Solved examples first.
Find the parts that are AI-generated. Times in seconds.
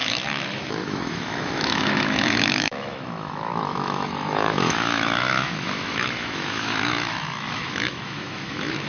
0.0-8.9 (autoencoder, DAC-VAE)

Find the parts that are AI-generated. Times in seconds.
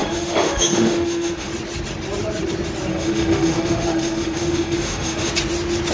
0.0-1.5 (autoencoder, DAC-VAE); 2.9-5.3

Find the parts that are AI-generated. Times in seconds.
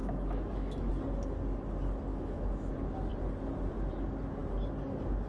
0.0-0.9 (autoencoder, DAC-VAE); 2.1-2.7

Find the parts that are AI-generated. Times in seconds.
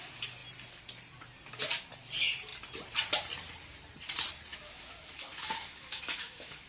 4.5-6.7 (autoencoder, DAC-VAE)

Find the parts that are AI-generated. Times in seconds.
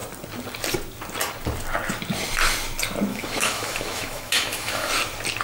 3.1-4.9 (autoencoder, DAC-VAE)